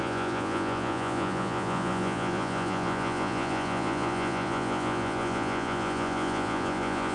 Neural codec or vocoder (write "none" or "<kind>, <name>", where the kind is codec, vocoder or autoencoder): vocoder, Vocos